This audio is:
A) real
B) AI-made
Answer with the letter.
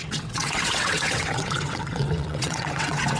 B